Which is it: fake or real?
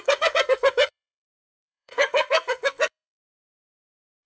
fake